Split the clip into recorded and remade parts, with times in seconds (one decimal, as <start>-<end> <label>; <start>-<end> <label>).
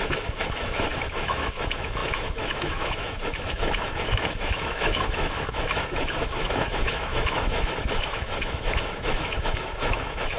0.0-10.4 remade